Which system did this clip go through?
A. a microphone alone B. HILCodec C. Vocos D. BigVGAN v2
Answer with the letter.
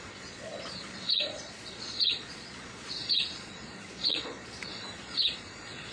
C